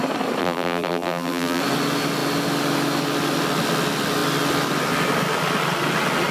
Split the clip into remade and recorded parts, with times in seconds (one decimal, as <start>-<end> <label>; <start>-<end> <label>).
0.0-0.4 recorded; 0.4-1.6 remade; 1.6-6.3 recorded

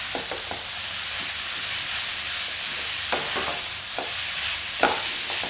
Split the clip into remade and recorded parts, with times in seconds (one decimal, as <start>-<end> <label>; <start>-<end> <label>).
0.0-3.5 recorded; 3.5-4.7 remade; 4.7-5.5 recorded

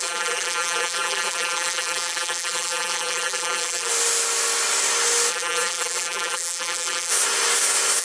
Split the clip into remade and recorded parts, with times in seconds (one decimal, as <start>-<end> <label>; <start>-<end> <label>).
0.0-3.9 remade; 3.9-5.3 recorded; 5.3-7.1 remade; 7.1-8.0 recorded

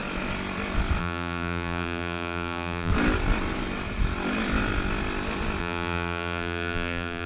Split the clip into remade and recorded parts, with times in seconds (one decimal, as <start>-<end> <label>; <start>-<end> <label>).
0.0-1.0 recorded; 1.0-2.9 remade; 2.9-5.6 recorded; 5.6-7.3 remade

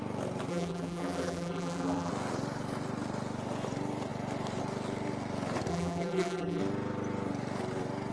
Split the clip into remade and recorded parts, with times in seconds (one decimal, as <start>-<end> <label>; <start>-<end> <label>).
0.0-0.5 recorded; 0.5-2.1 remade; 2.1-5.7 recorded; 5.7-6.6 remade; 6.6-8.1 recorded